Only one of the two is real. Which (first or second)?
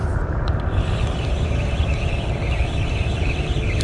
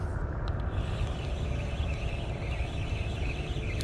second